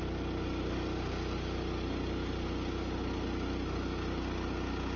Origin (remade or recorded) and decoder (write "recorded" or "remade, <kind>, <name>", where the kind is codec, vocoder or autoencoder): recorded